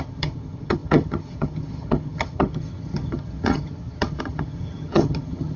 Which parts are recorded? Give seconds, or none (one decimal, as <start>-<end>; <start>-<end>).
none